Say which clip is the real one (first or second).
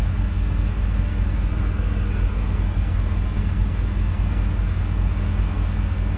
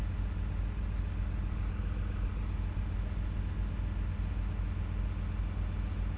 second